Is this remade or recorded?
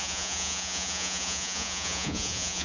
remade